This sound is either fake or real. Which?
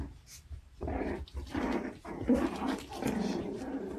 fake